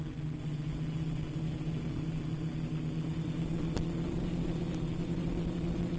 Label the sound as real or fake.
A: real